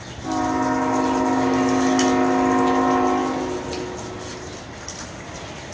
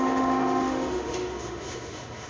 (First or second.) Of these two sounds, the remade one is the second